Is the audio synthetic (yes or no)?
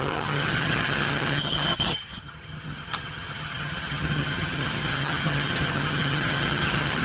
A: yes